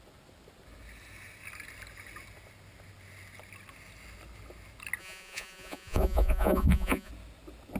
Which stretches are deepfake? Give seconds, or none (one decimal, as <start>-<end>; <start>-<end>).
5.0-7.1

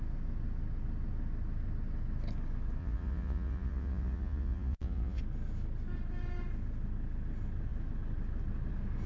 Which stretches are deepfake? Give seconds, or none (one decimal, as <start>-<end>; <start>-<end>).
2.8-5.2

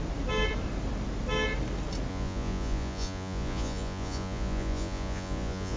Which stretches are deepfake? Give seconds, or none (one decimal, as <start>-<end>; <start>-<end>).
2.1-5.8